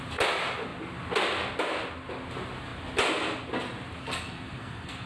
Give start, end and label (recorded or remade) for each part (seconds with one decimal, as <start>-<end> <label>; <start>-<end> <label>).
0.0-4.0 recorded; 4.0-5.1 remade